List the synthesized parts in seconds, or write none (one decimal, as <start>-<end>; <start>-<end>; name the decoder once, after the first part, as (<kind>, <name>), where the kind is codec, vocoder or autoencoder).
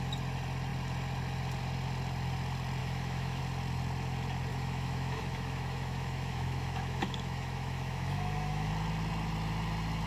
2.8-3.4 (autoencoder, DAC-VAE); 4.5-8.7